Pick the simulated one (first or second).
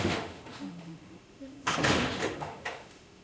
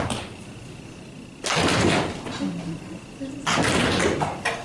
first